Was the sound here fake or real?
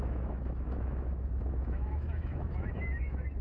fake